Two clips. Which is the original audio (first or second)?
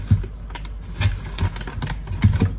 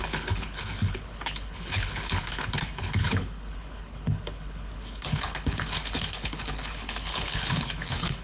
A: first